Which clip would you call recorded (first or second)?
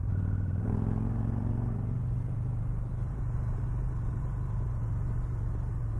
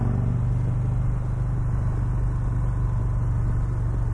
second